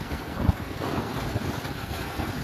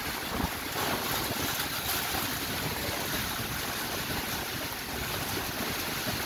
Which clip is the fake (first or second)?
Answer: first